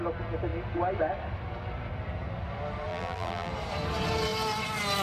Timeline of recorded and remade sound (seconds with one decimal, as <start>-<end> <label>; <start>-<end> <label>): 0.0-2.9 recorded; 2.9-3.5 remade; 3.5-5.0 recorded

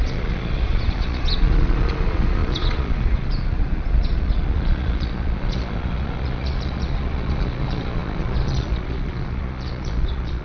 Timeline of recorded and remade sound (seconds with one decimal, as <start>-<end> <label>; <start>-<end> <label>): 0.0-10.4 remade

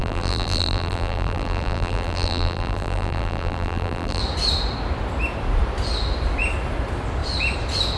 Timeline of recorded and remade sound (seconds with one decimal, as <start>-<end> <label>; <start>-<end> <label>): 0.0-4.2 remade; 4.2-8.0 recorded

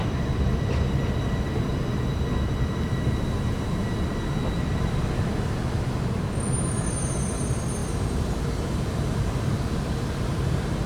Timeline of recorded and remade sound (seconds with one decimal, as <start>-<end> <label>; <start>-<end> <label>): 0.0-10.9 recorded

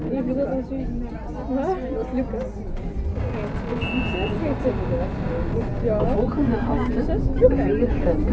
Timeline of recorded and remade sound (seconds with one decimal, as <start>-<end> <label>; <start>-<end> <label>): 0.0-8.3 recorded